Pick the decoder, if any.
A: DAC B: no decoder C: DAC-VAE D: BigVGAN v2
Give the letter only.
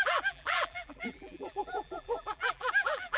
D